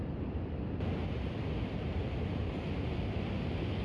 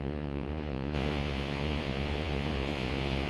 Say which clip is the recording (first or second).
first